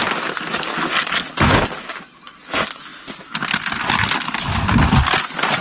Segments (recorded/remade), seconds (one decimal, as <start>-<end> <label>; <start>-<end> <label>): 0.0-2.9 remade; 2.9-5.6 recorded